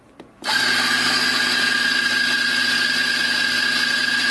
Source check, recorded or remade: recorded